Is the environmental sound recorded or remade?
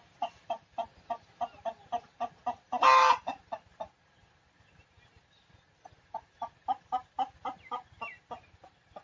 recorded